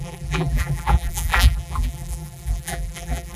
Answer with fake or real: fake